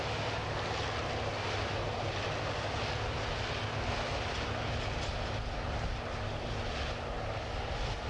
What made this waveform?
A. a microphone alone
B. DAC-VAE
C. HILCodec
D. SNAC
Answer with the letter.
A